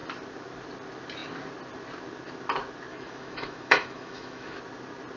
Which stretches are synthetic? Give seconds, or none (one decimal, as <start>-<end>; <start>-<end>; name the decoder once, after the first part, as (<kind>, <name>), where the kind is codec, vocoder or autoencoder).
2.9-4.6 (autoencoder, DAC-VAE)